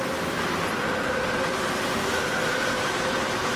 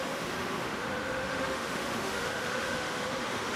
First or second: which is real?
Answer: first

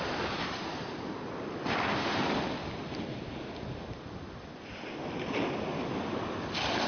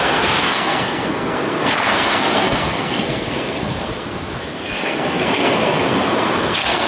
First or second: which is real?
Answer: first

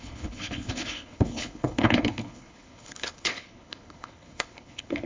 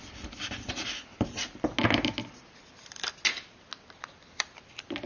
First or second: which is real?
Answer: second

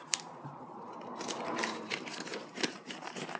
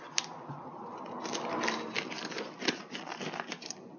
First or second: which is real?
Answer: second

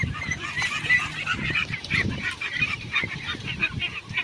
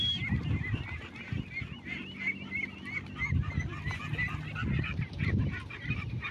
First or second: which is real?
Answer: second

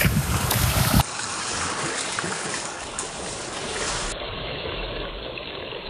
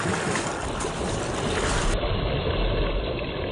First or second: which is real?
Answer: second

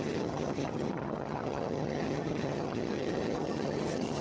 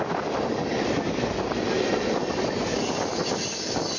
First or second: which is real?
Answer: second